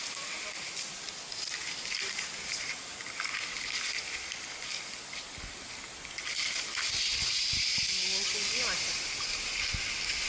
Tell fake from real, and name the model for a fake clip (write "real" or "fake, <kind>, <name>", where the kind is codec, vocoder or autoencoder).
real